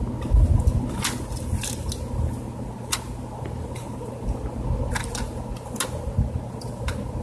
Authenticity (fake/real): real